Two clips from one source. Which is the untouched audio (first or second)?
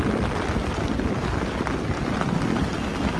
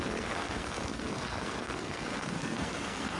first